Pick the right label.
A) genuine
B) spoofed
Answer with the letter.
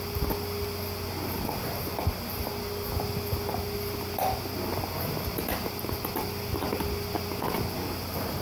A